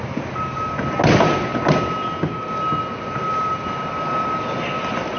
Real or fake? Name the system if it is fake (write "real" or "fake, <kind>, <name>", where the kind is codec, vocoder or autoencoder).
real